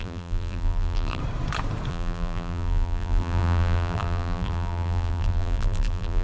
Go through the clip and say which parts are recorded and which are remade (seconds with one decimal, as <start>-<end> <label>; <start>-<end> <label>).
0.0-1.2 remade; 1.2-1.9 recorded; 1.9-6.2 remade